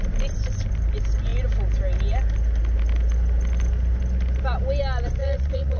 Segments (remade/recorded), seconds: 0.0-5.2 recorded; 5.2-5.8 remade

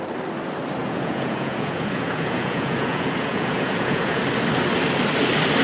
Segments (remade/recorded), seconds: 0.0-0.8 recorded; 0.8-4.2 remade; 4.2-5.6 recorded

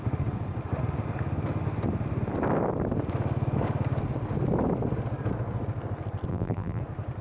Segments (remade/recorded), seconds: 0.0-6.3 recorded; 6.3-6.8 remade; 6.8-7.2 recorded

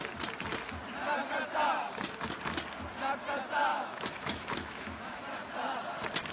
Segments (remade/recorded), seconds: 0.0-3.7 recorded; 3.7-5.2 remade; 5.2-6.3 recorded

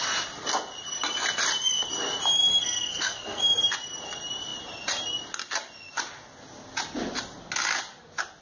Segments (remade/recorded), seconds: 0.0-2.5 recorded; 2.5-3.4 remade; 3.4-8.4 recorded